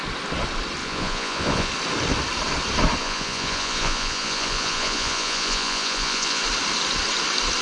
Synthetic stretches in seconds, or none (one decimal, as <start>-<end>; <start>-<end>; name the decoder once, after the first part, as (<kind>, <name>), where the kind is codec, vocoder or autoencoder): 0.8-1.7 (vocoder, Vocos); 3.0-6.4